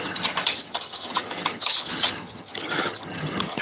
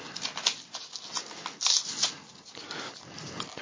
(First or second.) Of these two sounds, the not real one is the first